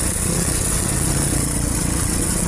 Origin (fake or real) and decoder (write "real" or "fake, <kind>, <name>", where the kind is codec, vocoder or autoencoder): fake, vocoder, WaveNeXt